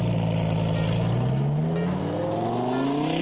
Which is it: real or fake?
real